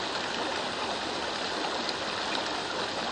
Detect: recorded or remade recorded